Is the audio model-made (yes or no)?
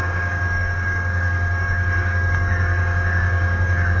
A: yes